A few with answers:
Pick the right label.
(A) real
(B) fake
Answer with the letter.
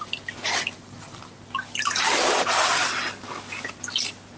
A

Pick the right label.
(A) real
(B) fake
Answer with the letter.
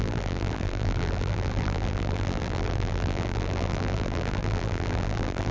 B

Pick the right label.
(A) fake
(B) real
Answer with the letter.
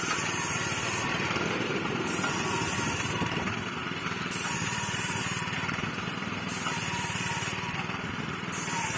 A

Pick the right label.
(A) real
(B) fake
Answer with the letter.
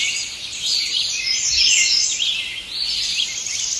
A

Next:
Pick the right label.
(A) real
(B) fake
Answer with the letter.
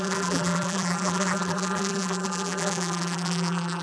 B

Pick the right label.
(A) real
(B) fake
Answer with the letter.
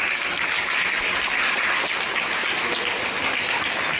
A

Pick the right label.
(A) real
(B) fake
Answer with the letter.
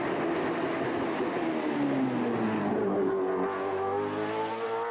A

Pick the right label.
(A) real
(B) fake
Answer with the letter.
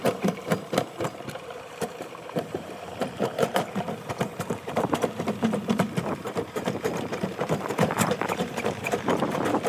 B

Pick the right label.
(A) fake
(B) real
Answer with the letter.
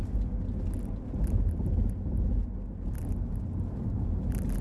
B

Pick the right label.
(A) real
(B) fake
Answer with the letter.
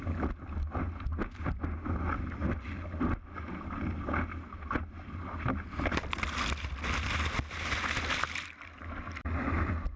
A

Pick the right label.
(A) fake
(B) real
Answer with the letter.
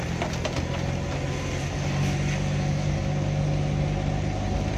B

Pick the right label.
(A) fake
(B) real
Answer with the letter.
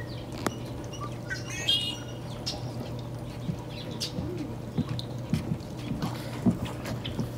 B